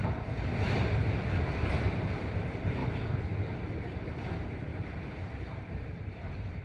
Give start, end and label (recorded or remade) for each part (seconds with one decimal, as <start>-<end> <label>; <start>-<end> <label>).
0.0-1.0 remade; 1.0-1.9 recorded; 1.9-2.8 remade; 2.8-3.8 recorded; 3.8-4.7 remade; 4.7-5.4 recorded; 5.4-6.6 remade